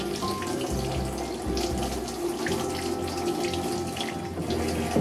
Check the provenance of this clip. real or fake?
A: real